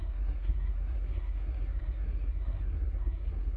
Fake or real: fake